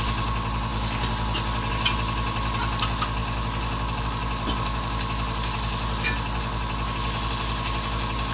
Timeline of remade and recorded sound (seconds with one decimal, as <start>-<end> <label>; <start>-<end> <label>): 0.0-8.3 recorded